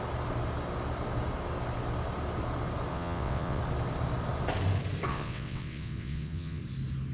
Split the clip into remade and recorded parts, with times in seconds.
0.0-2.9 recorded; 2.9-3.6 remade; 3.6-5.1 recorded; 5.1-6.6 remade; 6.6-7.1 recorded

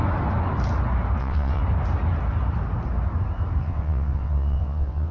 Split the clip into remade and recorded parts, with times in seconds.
0.0-1.2 recorded; 1.2-1.6 remade; 1.6-3.6 recorded; 3.6-5.1 remade

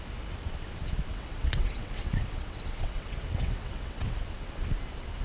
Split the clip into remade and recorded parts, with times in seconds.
0.0-1.1 recorded; 1.1-4.2 remade; 4.2-5.2 recorded

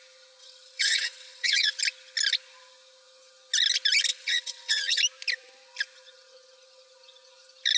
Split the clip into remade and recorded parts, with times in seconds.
0.0-0.4 recorded; 0.4-1.8 remade; 1.8-4.1 recorded; 4.1-5.0 remade; 5.0-7.8 recorded

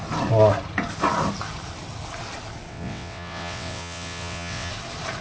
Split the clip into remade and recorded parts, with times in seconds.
0.0-2.7 recorded; 2.7-4.7 remade; 4.7-5.2 recorded

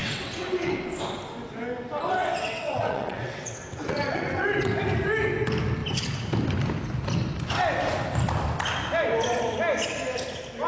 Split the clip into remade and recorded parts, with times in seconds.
0.0-0.7 remade; 0.7-2.2 recorded; 2.2-4.7 remade; 4.7-10.7 recorded

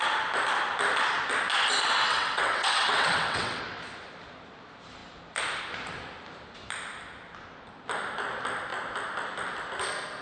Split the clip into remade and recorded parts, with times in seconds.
0.0-2.1 recorded; 2.1-3.6 remade; 3.6-10.2 recorded